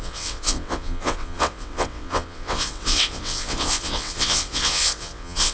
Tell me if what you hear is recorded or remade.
remade